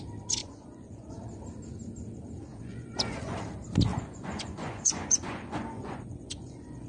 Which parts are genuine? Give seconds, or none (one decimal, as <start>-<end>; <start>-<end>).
0.0-0.4; 1.1-2.5; 3.4-3.9